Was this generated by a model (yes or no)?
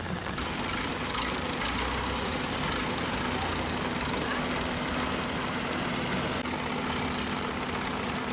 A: no